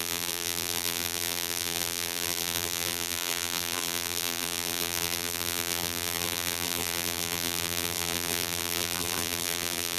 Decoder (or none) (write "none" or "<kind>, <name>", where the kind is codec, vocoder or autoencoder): vocoder, BigVGAN v2